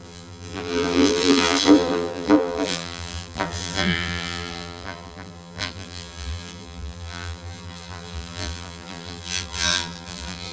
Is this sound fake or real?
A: fake